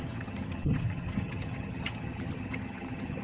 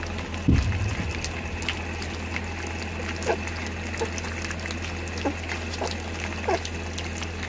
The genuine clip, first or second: second